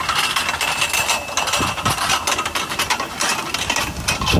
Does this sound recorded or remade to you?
recorded